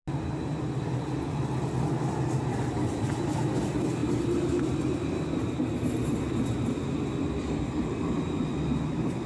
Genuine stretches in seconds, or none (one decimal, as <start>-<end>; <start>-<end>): 0.0-9.3